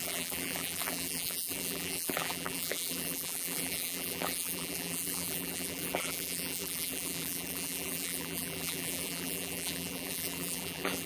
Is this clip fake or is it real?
fake